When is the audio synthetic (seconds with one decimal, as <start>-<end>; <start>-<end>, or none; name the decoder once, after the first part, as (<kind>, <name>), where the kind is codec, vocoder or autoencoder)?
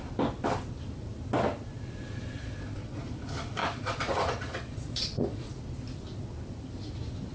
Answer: 2.4-3.0 (vocoder, Vocos); 3.6-5.5